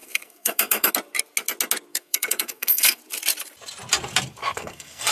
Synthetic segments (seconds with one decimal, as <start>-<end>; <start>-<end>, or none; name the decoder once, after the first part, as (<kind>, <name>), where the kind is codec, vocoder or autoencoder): 0.0-0.9 (codec, SNAC); 1.9-3.0; 4.4-5.1